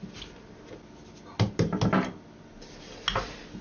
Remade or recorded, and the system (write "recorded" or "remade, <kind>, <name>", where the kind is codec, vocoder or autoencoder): recorded